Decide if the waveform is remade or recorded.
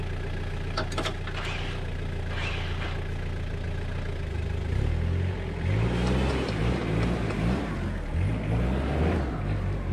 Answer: recorded